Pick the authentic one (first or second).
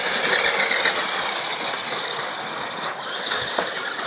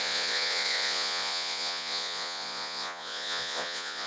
first